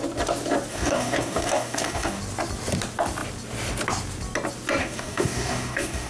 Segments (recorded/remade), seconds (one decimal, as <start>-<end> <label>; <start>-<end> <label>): 0.0-0.7 recorded; 0.7-2.2 remade; 2.2-4.8 recorded; 4.8-6.1 remade

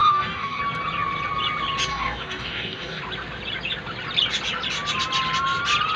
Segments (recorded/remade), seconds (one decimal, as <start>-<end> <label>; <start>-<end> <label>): 0.0-0.6 remade; 0.6-1.9 recorded; 1.9-3.0 remade; 3.0-6.0 recorded

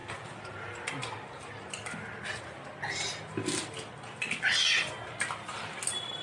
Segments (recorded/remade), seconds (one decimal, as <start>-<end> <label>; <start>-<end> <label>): 0.0-6.2 recorded

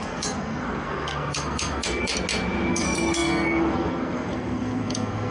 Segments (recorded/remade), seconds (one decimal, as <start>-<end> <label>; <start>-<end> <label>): 0.0-2.1 remade; 2.1-2.7 recorded; 2.7-5.3 remade

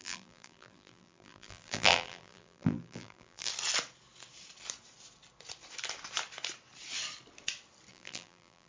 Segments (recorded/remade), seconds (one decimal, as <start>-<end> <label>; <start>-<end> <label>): 0.0-3.5 remade; 3.5-7.9 recorded; 7.9-8.7 remade

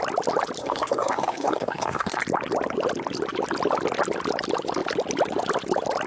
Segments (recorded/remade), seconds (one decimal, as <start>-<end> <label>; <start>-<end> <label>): 0.0-0.6 recorded; 0.6-2.2 remade; 2.2-6.1 recorded

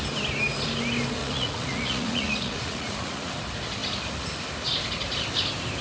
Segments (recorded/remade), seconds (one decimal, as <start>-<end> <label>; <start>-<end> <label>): 0.0-1.2 recorded; 1.2-3.3 remade; 3.3-5.8 recorded